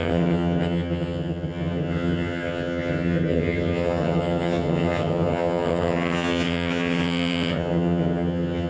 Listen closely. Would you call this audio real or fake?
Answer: fake